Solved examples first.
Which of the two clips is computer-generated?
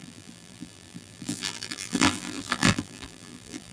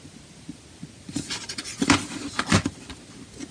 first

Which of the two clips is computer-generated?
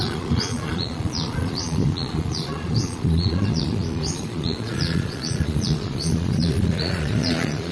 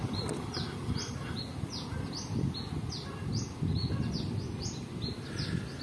first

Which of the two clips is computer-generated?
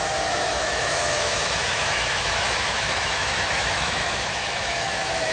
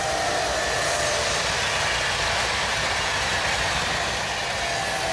first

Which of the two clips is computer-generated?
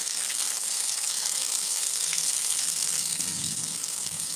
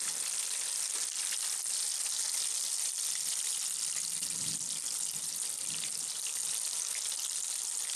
first